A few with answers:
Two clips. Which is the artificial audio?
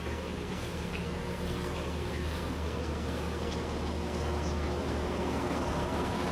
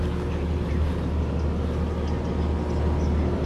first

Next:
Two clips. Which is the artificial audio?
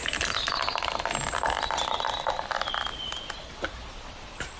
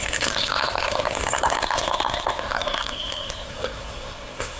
second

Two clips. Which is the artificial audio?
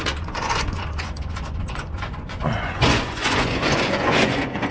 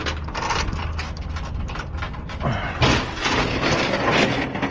first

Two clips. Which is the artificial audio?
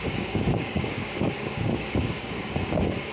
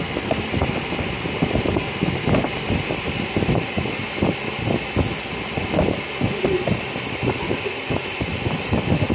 first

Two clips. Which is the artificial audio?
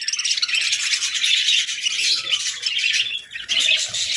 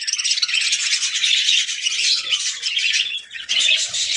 second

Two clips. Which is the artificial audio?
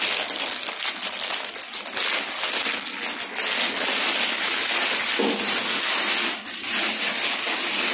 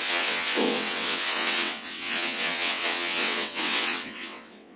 second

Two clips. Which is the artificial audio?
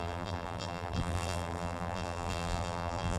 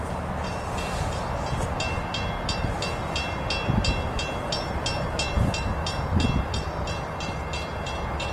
first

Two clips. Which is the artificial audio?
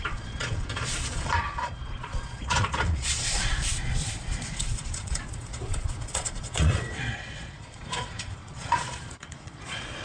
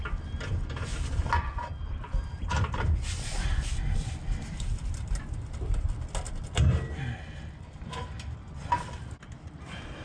first